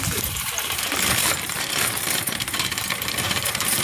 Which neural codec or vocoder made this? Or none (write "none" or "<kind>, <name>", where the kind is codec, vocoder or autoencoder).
vocoder, BigVGAN v2